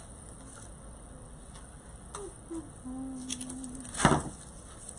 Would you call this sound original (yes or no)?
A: yes